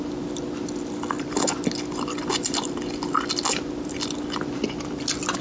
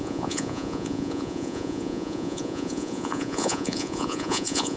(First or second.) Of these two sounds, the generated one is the second